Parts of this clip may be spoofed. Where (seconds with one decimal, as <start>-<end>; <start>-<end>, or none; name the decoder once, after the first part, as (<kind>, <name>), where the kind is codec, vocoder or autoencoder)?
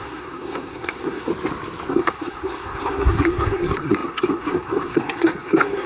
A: 0.0-1.3 (codec, SNAC); 1.9-5.9